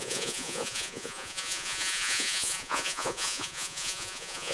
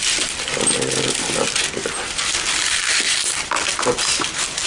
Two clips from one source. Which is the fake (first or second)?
first